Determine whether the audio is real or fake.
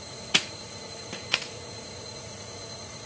fake